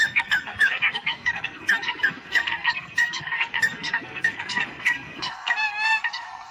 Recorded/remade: remade